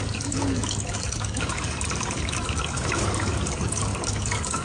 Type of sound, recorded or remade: remade